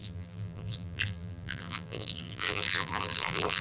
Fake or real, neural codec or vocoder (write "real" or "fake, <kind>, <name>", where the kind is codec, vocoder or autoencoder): fake, vocoder, BigVGAN v2